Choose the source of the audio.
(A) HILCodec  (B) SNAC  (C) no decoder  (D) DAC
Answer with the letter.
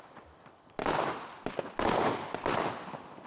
C